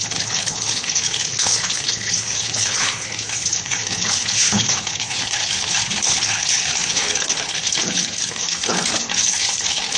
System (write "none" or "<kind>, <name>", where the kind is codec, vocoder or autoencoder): codec, HILCodec